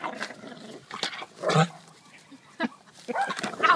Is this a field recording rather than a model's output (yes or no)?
yes